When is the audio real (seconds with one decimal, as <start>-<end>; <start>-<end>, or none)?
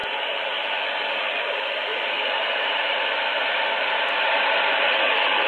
0.6-1.9; 5.0-5.5